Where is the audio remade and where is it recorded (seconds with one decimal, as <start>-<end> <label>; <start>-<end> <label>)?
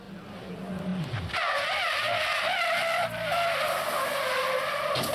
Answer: 0.0-5.1 recorded